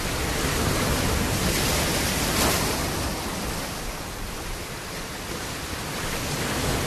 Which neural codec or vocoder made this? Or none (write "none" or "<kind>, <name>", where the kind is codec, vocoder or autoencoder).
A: none